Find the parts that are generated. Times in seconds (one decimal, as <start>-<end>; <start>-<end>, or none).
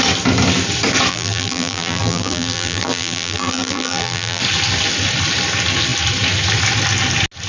1.1-4.4